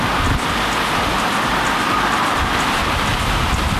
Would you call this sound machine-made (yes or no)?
no